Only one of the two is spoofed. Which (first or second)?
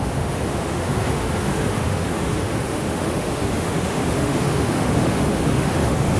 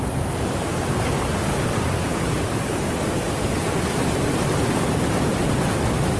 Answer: first